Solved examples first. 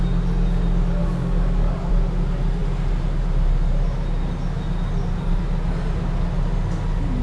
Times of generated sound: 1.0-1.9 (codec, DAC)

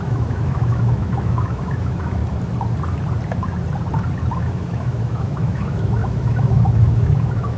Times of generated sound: 0.0-2.2 (autoencoder, DAC-VAE); 4.4-7.6

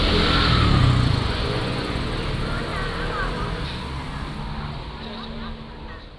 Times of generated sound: 0.8-2.1 (vocoder, Vocos)

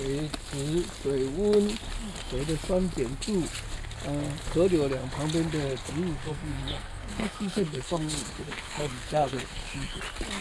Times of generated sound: 6.2-10.0 (codec, SNAC)